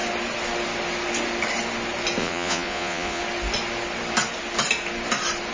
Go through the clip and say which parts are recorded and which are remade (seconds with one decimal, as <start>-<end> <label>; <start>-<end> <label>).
0.0-2.2 recorded; 2.2-3.2 remade; 3.2-5.5 recorded